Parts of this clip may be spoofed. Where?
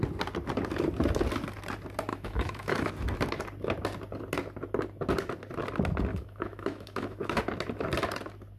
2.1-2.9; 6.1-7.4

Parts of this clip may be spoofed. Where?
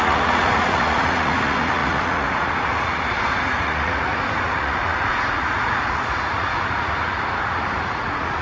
0.0-8.4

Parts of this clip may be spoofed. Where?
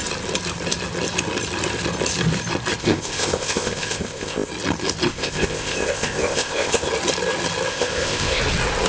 2.8-4.5; 5.1-6.9; 7.7-8.4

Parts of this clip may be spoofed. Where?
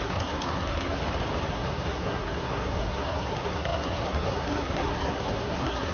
0.0-1.0; 1.5-5.9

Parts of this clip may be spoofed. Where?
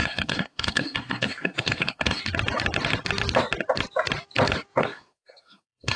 0.0-2.2; 4.8-6.0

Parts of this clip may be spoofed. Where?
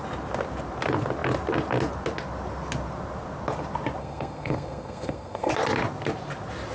4.0-5.5